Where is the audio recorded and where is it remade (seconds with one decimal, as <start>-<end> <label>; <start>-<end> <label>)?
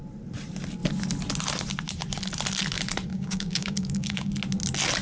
0.0-3.1 recorded; 3.1-4.3 remade; 4.3-5.0 recorded